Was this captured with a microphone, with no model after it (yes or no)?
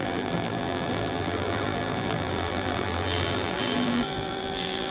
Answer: no